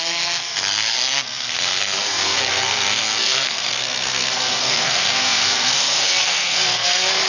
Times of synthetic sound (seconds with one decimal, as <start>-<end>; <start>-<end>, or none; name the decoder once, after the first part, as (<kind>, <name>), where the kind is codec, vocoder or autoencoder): 0.0-7.3 (codec, SNAC)